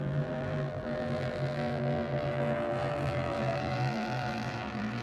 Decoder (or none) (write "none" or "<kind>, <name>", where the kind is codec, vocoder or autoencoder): vocoder, BigVGAN v2